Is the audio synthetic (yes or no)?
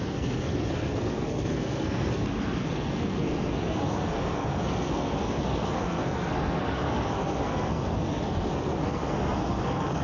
yes